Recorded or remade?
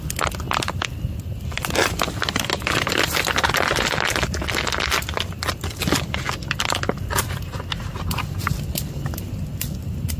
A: recorded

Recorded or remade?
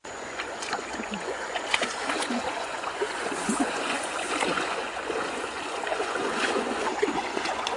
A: remade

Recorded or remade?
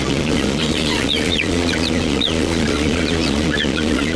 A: remade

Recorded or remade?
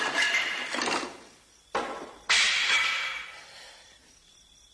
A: recorded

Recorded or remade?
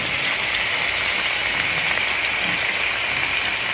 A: recorded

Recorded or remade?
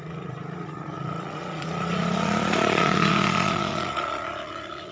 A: remade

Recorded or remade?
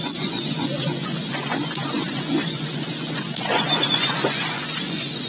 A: remade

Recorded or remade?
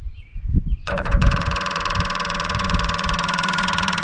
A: remade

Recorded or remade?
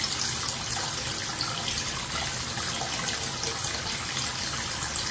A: recorded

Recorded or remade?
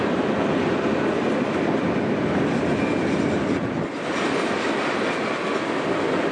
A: recorded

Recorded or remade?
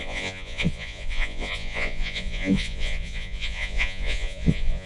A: remade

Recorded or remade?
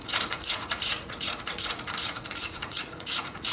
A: remade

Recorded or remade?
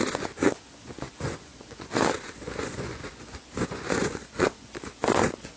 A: remade